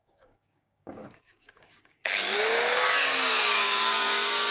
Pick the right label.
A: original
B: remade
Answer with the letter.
B